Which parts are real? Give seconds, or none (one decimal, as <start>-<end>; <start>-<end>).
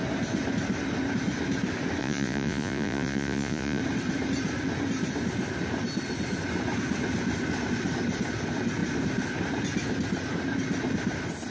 0.0-2.0; 3.8-11.5